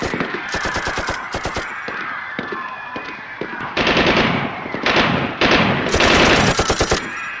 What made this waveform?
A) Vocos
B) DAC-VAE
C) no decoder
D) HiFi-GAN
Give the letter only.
C